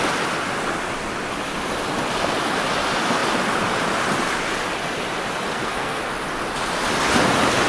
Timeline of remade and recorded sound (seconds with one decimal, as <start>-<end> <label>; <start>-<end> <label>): 0.0-5.5 recorded; 5.5-6.1 remade; 6.1-7.7 recorded